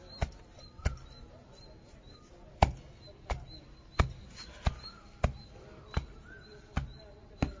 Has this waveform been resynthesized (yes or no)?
no